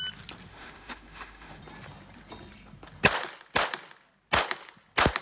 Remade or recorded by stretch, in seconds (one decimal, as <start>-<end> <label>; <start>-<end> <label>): 0.0-0.5 recorded; 0.5-1.6 remade; 1.6-5.2 recorded